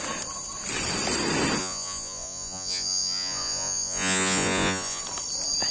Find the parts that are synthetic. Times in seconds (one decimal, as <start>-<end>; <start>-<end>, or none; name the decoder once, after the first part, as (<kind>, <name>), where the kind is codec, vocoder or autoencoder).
1.6-5.0 (vocoder, Vocos)